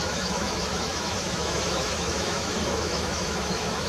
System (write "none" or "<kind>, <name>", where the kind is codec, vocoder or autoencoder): autoencoder, DAC-VAE